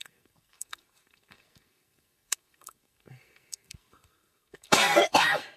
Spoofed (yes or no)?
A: yes